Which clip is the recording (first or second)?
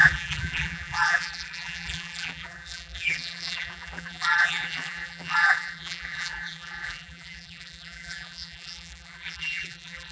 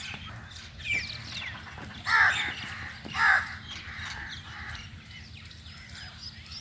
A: second